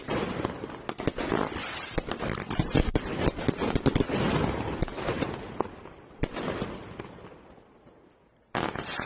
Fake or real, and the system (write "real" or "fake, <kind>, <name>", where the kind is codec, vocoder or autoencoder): real